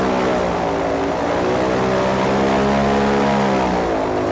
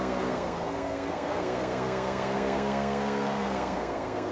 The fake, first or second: second